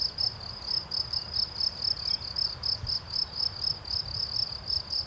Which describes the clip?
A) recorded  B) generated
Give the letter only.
A